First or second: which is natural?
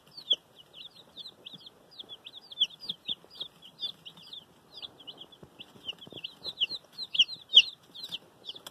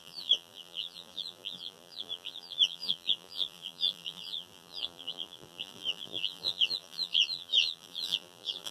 first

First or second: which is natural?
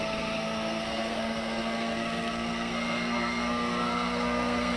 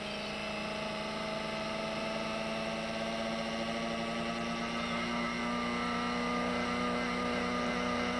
second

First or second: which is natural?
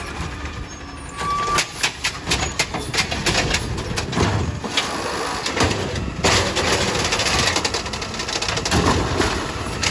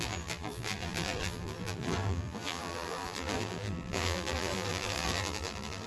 first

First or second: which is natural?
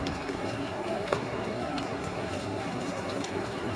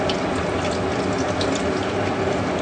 second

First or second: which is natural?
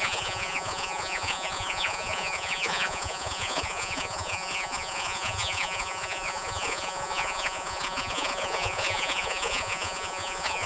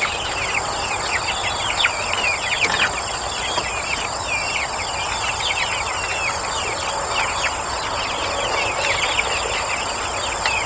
second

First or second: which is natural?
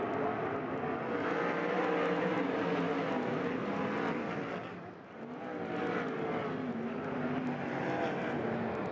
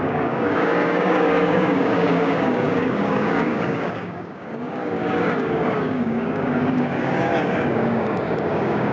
first